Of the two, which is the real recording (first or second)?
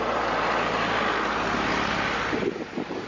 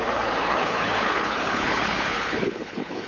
first